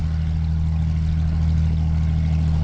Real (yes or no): yes